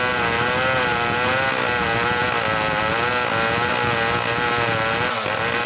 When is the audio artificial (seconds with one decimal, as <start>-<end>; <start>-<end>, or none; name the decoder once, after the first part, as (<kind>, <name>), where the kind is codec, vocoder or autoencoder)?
none